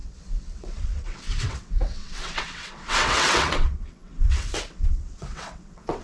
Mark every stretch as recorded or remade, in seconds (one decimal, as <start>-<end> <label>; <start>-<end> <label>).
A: 0.0-6.0 remade